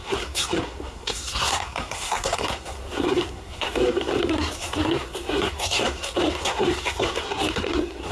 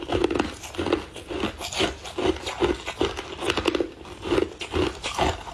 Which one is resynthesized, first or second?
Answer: first